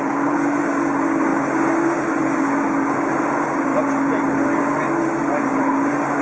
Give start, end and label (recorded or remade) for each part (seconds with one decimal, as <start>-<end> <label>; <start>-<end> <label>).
0.0-6.2 recorded